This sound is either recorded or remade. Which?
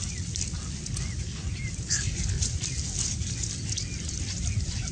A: recorded